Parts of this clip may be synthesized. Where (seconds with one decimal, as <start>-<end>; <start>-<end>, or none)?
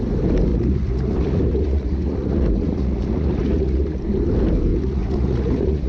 0.5-4.0; 4.7-5.9